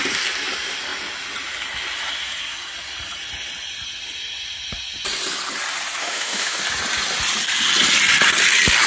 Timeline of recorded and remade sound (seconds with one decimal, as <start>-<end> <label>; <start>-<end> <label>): 0.0-6.0 recorded; 6.0-6.6 remade; 6.6-8.9 recorded

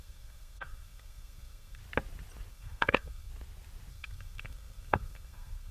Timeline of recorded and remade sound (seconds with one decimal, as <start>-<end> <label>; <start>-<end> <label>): 0.0-1.8 remade; 1.8-2.5 recorded; 2.5-3.3 remade; 3.3-3.9 recorded; 3.9-5.7 remade

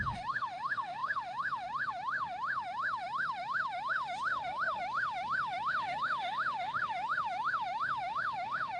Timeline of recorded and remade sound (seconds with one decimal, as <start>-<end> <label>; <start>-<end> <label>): 0.0-8.8 remade

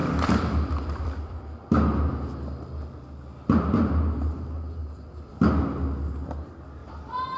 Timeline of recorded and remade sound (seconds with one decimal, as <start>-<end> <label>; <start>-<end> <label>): 0.0-1.4 remade; 1.4-6.8 recorded; 6.8-7.4 remade